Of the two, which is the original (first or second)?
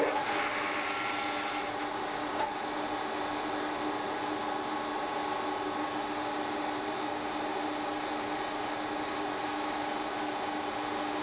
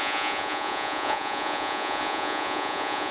first